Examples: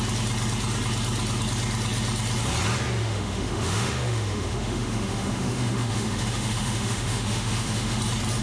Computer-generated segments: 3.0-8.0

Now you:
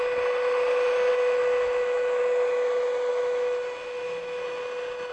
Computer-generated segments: 1.1-2.2; 3.1-4.6

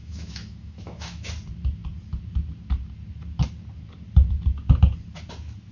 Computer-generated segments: 0.0-1.3

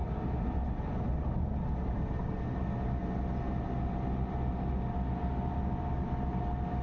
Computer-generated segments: none

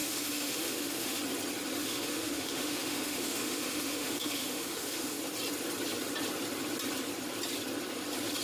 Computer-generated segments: 0.0-1.2; 1.8-5.2